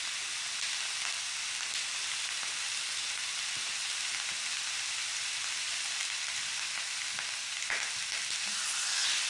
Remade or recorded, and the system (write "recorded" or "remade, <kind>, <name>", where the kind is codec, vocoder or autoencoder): recorded